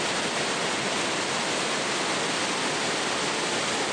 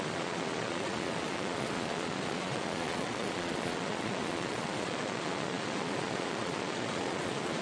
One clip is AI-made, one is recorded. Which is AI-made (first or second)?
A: second